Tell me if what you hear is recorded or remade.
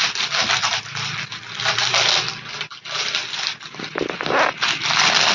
recorded